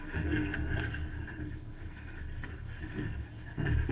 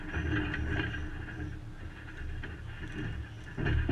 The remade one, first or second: first